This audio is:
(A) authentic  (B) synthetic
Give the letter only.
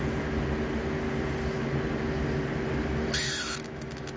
A